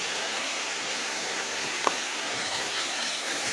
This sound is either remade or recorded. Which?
remade